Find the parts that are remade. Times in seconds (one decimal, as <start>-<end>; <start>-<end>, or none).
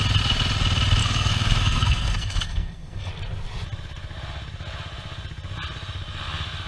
1.0-3.1